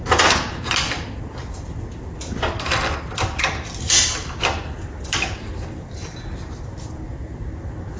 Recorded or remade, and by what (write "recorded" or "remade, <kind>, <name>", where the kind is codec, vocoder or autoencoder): recorded